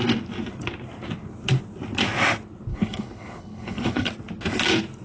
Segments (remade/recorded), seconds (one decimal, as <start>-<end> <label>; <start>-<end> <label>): 0.0-2.7 recorded; 2.7-4.1 remade; 4.1-5.0 recorded